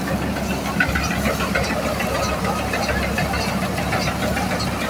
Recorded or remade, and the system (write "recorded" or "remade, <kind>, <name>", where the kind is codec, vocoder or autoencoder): recorded